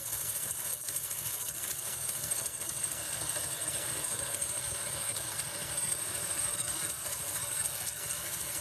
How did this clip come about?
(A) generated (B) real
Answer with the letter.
A